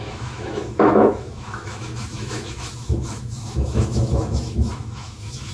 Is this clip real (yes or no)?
no